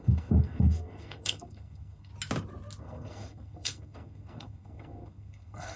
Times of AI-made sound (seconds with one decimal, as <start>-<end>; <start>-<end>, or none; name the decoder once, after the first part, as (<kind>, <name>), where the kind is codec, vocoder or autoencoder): 0.0-2.1 (codec, SNAC); 2.8-5.8